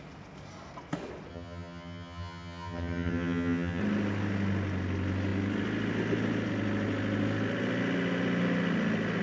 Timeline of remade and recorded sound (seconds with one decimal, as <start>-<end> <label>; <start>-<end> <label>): 0.0-1.3 recorded; 1.3-3.8 remade; 3.8-9.2 recorded